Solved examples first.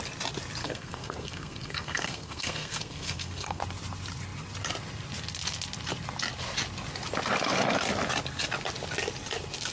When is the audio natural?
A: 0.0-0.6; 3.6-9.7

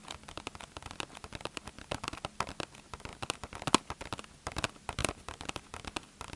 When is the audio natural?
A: 0.0-1.3; 2.0-5.0; 5.6-6.4

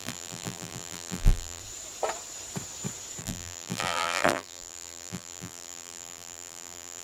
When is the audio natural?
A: 1.6-3.2

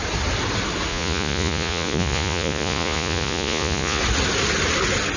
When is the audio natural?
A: 0.0-0.9; 4.0-5.2

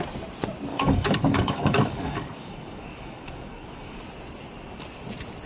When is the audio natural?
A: 0.0-0.7; 4.0-5.5

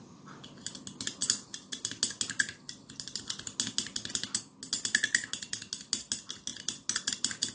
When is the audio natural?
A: 0.0-7.5

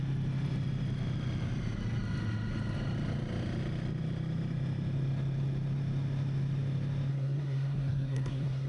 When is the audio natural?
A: 0.0-7.1